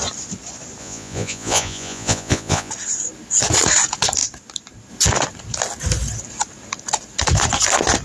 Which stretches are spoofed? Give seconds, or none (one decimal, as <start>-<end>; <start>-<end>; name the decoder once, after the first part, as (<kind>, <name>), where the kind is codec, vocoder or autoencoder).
0.8-2.7 (vocoder, Vocos)